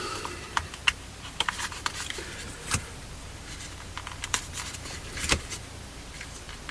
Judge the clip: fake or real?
fake